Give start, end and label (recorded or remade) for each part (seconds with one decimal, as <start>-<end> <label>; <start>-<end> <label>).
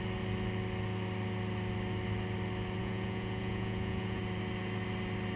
0.0-2.8 recorded; 2.8-4.2 remade; 4.2-5.4 recorded